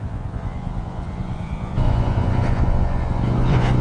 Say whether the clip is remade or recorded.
remade